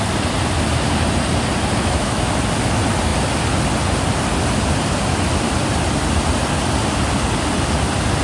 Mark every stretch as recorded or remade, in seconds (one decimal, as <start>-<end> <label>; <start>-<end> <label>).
0.0-1.8 recorded; 1.8-2.3 remade; 2.3-8.2 recorded